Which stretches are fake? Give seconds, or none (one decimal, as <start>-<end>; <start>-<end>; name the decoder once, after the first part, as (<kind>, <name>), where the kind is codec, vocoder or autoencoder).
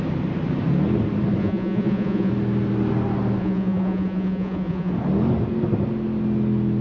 1.4-2.3 (vocoder, Vocos); 3.4-4.9